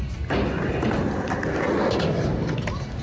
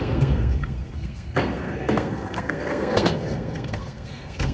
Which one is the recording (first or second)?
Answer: first